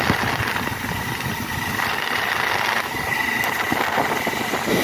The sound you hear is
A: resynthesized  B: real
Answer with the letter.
B